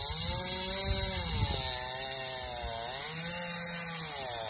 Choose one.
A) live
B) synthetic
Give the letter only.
A